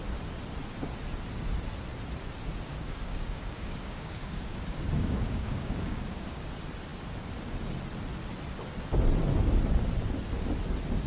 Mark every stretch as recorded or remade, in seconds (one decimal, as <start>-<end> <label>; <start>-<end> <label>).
0.0-2.7 recorded; 2.7-6.5 remade; 6.5-11.1 recorded